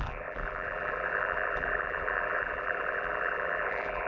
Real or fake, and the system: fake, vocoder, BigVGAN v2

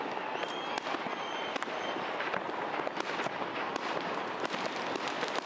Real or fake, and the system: fake, vocoder, BigVGAN v2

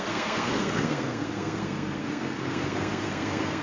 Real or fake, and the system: fake, codec, SNAC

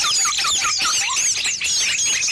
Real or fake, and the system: real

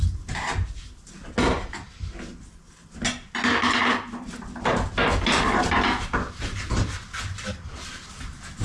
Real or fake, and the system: real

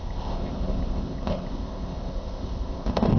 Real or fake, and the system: fake, codec, ZipCodec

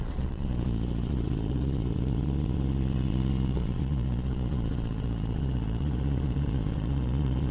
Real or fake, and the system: fake, vocoder, Vocos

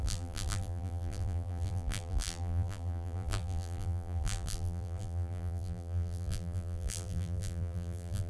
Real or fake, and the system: fake, vocoder, BigVGAN v2